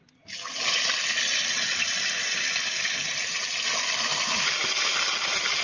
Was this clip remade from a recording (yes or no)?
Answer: no